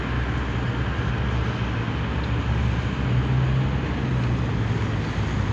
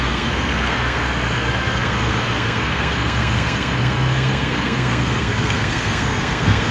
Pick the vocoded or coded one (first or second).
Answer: second